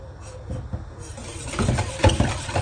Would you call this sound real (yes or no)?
yes